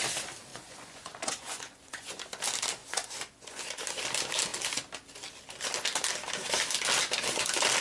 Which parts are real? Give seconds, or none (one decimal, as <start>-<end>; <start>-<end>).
0.0-0.5; 2.2-2.8; 3.6-7.8